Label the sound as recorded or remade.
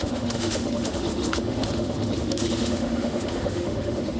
remade